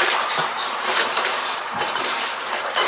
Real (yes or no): no